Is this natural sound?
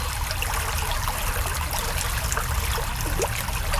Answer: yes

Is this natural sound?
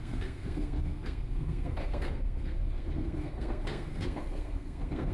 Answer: no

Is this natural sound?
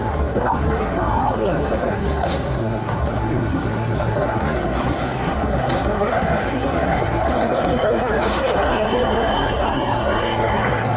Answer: no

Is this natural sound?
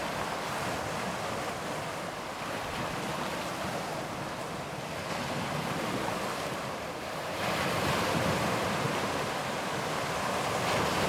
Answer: yes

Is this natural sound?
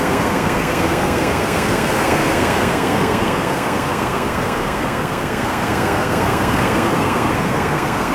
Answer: no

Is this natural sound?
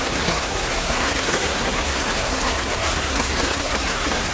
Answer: no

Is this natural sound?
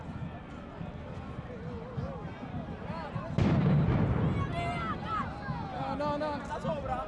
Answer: yes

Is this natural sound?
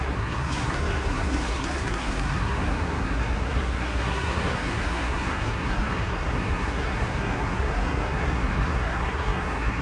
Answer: no